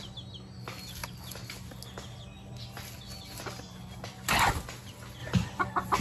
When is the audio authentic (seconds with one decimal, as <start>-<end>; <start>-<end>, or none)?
0.0-6.0